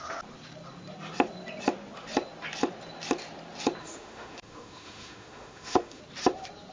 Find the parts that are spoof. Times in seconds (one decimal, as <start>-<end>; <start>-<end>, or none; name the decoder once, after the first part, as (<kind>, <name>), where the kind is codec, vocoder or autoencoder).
3.8-6.0 (autoencoder, DAC-VAE)